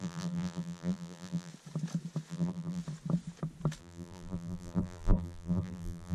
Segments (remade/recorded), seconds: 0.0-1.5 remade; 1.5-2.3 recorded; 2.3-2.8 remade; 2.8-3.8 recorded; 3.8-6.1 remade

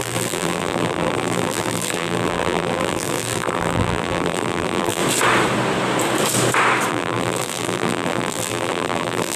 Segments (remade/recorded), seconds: 0.0-5.0 remade; 5.0-6.9 recorded; 6.9-9.4 remade

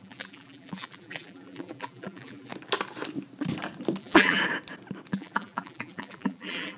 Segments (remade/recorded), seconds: 0.0-2.5 remade; 2.5-4.0 recorded; 4.0-4.4 remade; 4.4-5.1 recorded; 5.1-6.8 remade

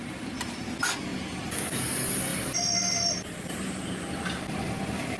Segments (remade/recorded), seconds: 0.0-1.1 recorded; 1.1-1.8 remade; 1.8-5.2 recorded

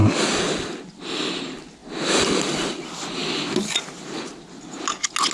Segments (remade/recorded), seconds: 0.0-5.3 recorded